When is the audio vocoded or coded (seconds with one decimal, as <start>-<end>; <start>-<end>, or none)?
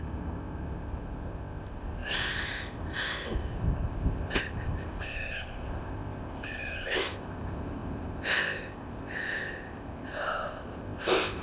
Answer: 0.0-11.4